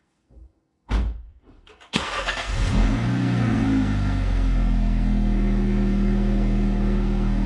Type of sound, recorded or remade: remade